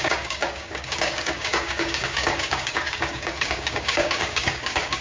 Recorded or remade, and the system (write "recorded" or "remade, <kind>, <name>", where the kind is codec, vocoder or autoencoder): remade, codec, DAC